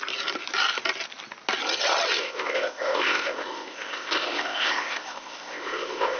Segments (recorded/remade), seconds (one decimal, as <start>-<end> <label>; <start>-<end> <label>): 0.0-2.2 recorded; 2.2-6.2 remade